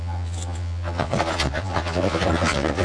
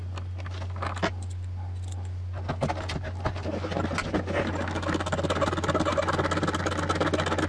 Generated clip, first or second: first